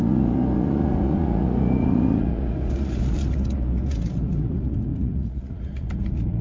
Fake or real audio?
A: fake